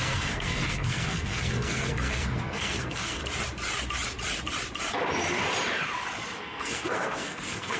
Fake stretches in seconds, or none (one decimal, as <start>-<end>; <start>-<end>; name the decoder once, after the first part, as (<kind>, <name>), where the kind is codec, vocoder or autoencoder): 0.0-3.2 (codec, SNAC); 6.4-7.8